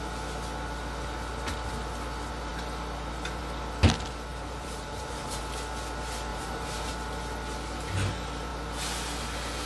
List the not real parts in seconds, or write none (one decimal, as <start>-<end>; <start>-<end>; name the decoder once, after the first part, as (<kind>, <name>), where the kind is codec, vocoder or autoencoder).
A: 4.3-5.4 (vocoder, BigVGAN v2); 6.3-6.9

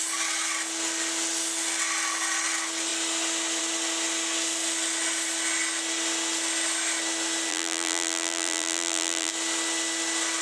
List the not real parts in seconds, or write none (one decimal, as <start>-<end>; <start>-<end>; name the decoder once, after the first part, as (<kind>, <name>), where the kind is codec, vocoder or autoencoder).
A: 7.5-9.3 (vocoder, BigVGAN v2)

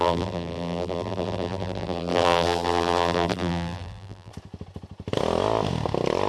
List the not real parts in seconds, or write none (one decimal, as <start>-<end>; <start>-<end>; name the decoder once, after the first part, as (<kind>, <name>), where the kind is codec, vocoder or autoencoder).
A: 0.0-4.3 (vocoder, BigVGAN v2)